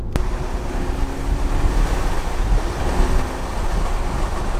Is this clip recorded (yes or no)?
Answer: yes